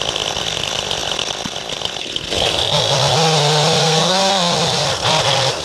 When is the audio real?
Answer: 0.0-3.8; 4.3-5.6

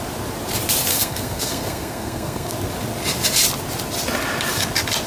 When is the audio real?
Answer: 0.0-0.9; 2.5-5.1

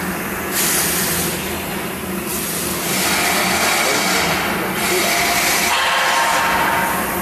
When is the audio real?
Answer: 0.0-7.2

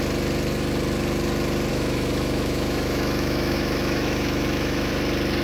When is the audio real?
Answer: 0.0-1.7; 4.9-5.4

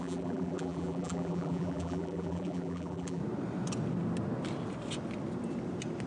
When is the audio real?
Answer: 3.2-6.1

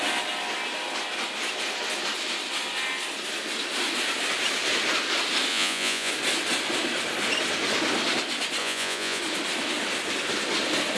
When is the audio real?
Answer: 0.0-5.5; 6.1-8.6; 9.2-11.0

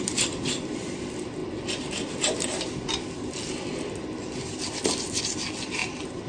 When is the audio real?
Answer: 0.0-6.3

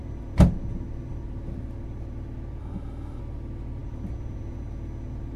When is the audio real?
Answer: 0.0-2.6; 3.2-5.4